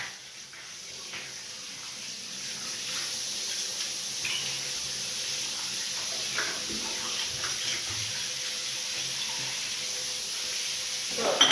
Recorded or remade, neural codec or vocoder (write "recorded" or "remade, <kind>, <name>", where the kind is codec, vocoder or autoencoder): recorded